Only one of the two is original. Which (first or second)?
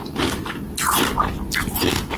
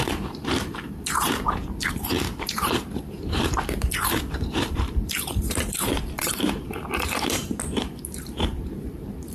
first